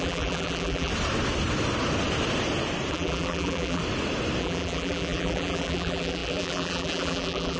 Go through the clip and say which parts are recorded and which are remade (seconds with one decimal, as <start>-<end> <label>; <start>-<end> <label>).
0.0-0.9 remade; 0.9-2.9 recorded; 2.9-3.8 remade; 3.8-4.4 recorded; 4.4-7.6 remade